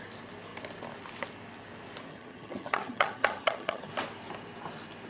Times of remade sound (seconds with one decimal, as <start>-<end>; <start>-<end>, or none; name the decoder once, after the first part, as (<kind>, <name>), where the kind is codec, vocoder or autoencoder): 2.1-3.9 (vocoder, HiFi-GAN)